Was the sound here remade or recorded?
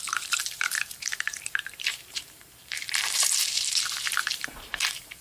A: remade